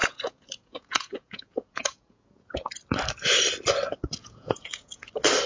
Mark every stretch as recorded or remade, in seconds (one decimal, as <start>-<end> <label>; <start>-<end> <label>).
0.0-2.7 remade; 2.7-4.2 recorded; 4.2-5.1 remade; 5.1-5.5 recorded